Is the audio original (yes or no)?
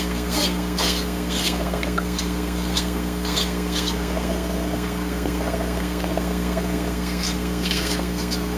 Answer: no